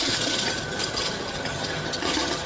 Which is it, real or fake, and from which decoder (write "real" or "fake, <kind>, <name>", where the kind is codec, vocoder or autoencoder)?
fake, vocoder, HiFi-GAN